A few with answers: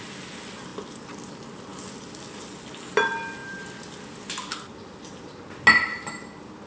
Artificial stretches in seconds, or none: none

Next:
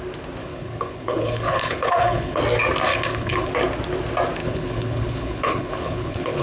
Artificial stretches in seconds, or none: 0.4-2.4 (codec, HILCodec); 2.9-3.5; 4.4-6.4